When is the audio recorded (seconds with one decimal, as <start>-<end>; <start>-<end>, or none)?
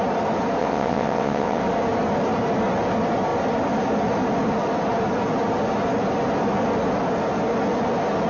0.0-0.6; 1.6-8.3